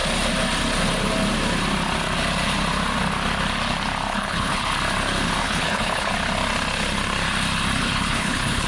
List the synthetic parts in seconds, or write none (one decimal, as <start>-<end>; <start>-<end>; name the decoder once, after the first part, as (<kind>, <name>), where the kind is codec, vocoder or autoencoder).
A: 4.1-4.7 (codec, HILCodec); 5.4-6.1; 7.8-8.7